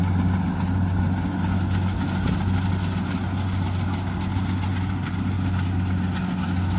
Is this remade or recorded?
recorded